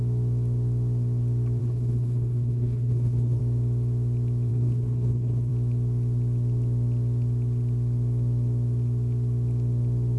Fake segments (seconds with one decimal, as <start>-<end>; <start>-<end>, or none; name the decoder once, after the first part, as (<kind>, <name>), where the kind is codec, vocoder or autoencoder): 1.6-3.4 (codec, HILCodec); 4.5-5.5